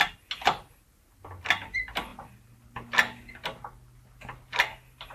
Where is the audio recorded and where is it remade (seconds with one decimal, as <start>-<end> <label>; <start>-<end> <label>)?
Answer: 0.0-5.1 recorded